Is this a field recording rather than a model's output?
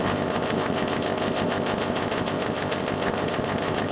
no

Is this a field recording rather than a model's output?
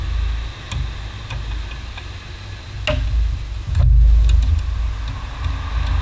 yes